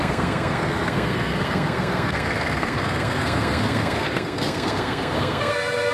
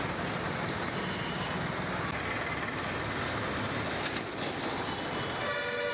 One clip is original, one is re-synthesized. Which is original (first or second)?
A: second